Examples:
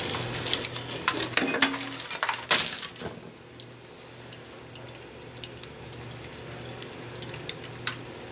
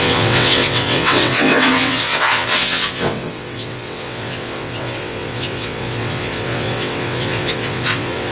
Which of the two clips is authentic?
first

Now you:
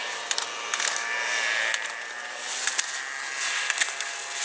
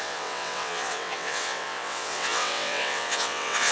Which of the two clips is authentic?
first